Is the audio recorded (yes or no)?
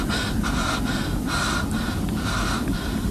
yes